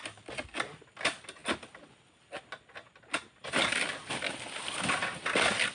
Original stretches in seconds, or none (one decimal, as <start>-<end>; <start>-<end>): 0.0-5.7